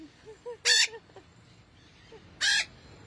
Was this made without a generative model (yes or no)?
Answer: yes